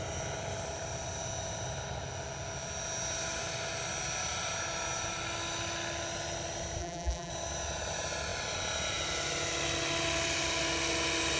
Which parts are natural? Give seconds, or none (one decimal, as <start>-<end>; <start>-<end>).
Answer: 0.0-6.8; 7.3-11.4